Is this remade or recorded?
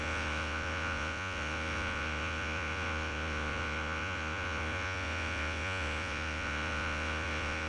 remade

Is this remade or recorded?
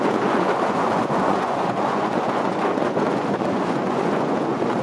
remade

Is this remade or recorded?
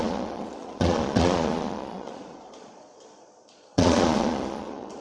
remade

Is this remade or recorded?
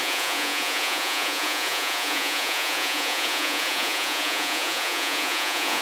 remade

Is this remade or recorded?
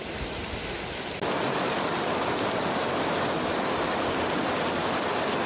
recorded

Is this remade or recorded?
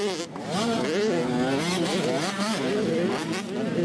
recorded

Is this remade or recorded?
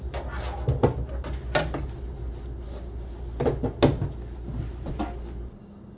recorded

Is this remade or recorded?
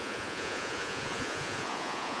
remade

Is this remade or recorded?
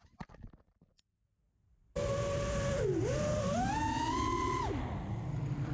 recorded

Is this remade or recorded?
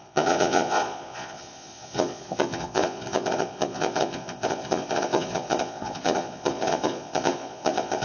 remade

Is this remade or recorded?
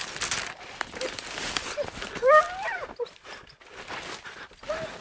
recorded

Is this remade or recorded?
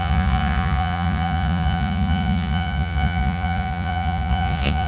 remade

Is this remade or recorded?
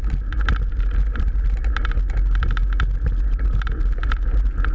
recorded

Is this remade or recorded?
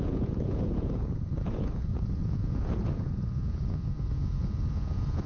remade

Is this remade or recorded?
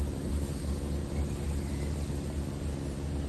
recorded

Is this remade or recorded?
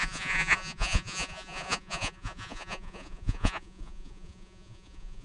remade